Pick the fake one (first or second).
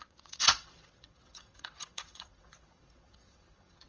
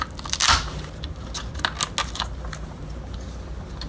first